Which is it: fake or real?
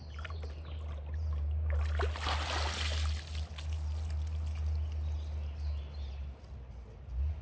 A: real